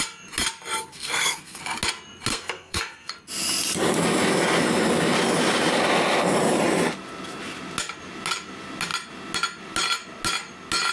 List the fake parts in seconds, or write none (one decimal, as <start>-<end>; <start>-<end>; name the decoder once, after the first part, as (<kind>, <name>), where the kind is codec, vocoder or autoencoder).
0.9-1.6 (codec, SNAC); 2.3-3.1